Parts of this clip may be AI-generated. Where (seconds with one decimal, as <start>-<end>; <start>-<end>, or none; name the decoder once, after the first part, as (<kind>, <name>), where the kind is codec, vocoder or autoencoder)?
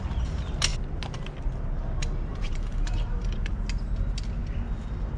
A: 2.3-3.5 (vocoder, BigVGAN v2)